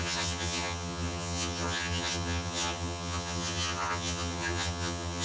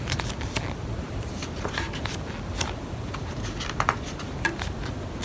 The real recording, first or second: second